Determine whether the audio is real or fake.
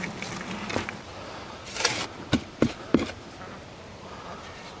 real